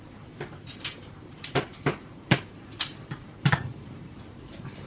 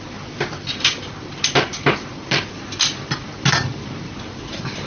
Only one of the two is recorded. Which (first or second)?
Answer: second